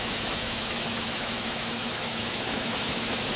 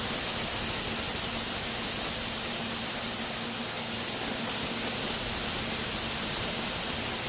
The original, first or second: second